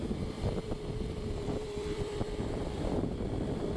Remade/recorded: remade